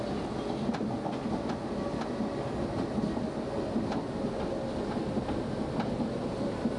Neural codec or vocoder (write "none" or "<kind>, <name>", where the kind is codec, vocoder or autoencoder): none